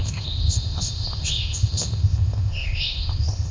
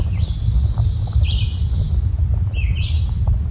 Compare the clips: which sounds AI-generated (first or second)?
first